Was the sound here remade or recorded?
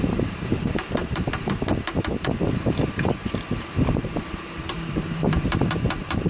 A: remade